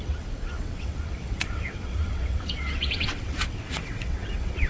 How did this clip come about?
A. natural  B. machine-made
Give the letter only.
B